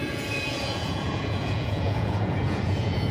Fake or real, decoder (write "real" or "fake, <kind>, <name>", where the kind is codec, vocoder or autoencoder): fake, vocoder, Vocos